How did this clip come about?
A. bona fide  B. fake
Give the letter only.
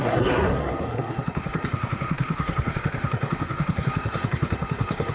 B